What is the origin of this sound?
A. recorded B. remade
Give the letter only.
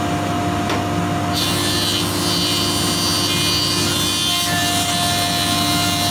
A